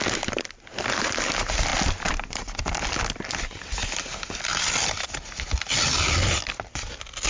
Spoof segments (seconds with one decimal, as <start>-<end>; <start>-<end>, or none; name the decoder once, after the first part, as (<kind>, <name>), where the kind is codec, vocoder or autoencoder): none